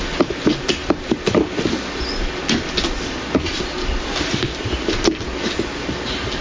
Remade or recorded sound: recorded